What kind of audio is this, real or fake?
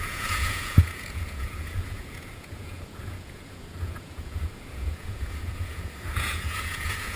fake